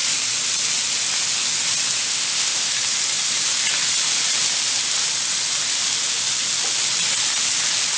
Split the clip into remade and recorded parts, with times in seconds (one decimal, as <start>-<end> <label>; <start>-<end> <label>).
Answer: 0.0-2.0 recorded; 2.0-2.7 remade; 2.7-8.0 recorded